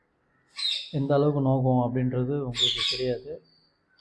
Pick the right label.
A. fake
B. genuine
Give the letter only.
B